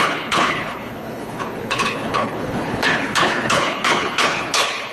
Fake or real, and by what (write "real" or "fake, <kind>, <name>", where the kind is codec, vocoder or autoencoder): fake, codec, HILCodec